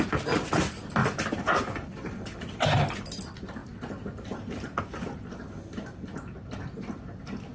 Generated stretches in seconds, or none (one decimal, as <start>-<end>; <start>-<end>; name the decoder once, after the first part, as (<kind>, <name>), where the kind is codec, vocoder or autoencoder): none